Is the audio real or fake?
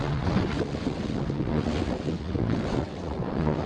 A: fake